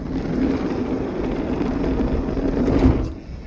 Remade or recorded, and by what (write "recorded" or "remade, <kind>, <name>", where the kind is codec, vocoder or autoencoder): recorded